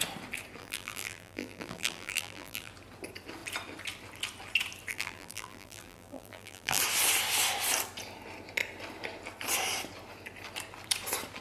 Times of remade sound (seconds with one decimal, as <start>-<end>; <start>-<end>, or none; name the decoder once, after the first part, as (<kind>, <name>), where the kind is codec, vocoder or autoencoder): 0.6-2.7 (vocoder, BigVGAN v2); 4.9-6.8